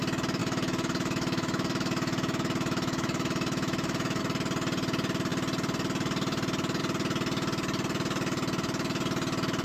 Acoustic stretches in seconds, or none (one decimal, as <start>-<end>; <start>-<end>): 0.0-0.4; 4.2-9.6